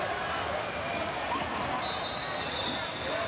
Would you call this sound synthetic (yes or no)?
no